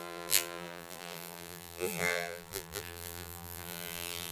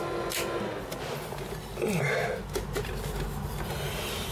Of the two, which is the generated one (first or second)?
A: first